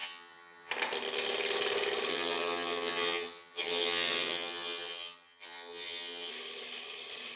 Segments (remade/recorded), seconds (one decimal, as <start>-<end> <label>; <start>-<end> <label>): 0.0-0.7 remade; 0.7-2.1 recorded; 2.1-6.3 remade; 6.3-7.4 recorded